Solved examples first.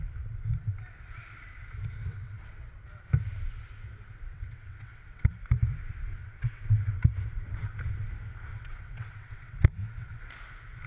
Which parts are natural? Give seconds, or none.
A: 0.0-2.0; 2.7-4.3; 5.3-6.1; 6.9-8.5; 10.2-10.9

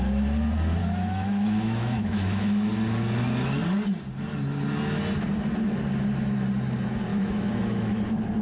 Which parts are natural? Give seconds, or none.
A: 0.0-0.8; 2.7-7.1; 8.0-8.4